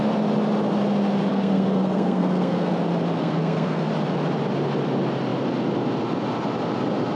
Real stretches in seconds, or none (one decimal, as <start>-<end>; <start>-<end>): 0.0-1.3; 2.7-3.2; 3.9-7.2